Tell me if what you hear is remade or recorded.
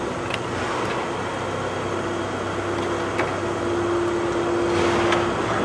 recorded